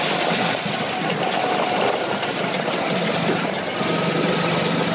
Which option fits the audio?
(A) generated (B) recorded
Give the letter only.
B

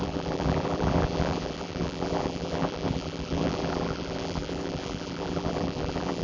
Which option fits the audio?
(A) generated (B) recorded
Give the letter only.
A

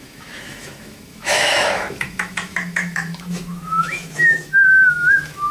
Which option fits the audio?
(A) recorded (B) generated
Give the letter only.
B